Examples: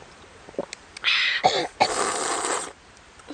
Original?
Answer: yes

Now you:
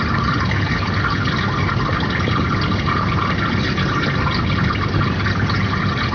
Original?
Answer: yes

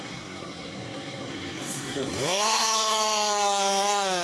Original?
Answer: no